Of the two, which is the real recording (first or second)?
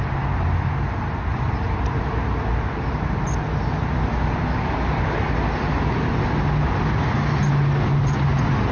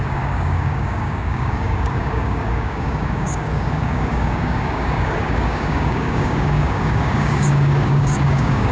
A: first